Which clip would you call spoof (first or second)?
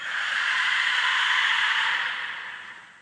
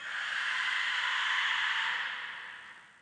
first